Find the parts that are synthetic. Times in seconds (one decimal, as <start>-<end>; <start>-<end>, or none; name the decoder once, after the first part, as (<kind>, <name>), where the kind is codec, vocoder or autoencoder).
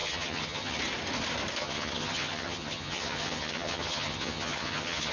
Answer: 0.0-0.8 (vocoder, HiFi-GAN); 1.6-5.1